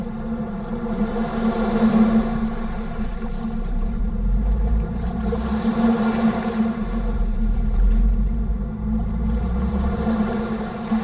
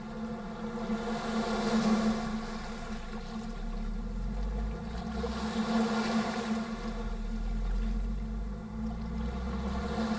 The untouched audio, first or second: second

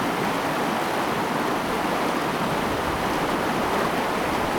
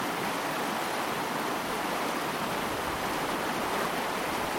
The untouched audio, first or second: first